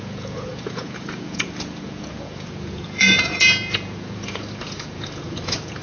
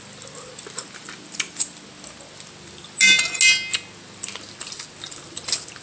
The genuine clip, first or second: second